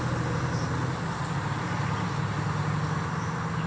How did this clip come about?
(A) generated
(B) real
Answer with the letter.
B